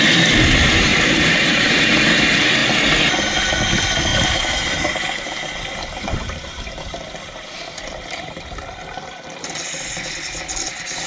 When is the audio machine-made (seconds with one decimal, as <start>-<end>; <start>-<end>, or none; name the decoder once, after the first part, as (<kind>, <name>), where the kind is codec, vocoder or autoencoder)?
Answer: 0.9-1.9 (vocoder, BigVGAN v2); 4.1-9.0